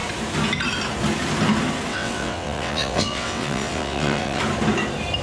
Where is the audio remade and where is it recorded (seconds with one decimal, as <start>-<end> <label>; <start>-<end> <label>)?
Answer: 0.0-1.9 recorded; 1.9-4.4 remade; 4.4-5.2 recorded